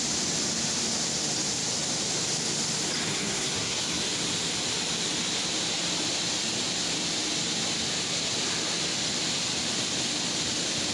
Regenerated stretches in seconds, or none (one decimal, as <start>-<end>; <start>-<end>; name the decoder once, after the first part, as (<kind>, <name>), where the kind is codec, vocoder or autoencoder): 3.1-4.0 (codec, SNAC)